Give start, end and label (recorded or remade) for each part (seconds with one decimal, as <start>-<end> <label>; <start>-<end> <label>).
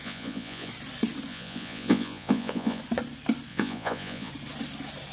0.0-0.7 remade; 0.7-1.3 recorded; 1.3-2.8 remade; 2.8-3.5 recorded; 3.5-4.3 remade; 4.3-5.1 recorded